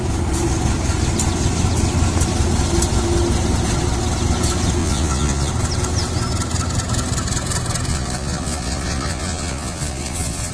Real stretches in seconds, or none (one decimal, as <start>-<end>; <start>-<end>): 0.0-4.8; 5.5-7.9